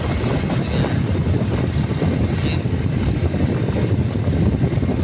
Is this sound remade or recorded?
recorded